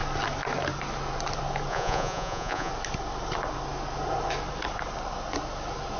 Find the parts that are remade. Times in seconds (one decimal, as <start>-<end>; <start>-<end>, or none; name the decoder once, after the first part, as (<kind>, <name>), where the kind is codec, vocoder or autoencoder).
1.7-2.7 (vocoder, Vocos)